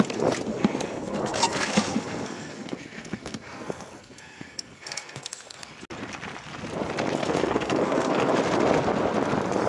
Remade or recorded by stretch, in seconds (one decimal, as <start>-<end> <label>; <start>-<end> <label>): 0.0-0.5 recorded; 0.5-5.7 remade; 5.7-7.2 recorded; 7.2-8.3 remade; 8.3-9.7 recorded